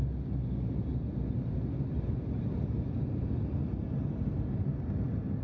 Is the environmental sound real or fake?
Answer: real